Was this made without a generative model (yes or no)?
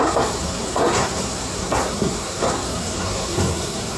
no